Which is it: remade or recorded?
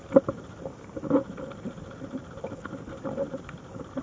recorded